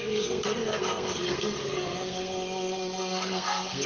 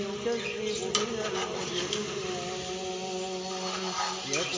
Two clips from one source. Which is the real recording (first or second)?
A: second